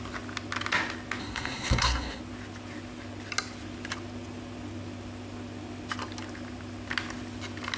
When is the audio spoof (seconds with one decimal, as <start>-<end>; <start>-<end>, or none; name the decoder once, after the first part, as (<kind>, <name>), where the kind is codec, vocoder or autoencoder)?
1.2-2.2 (codec, SNAC)